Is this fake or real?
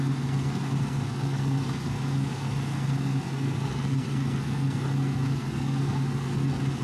fake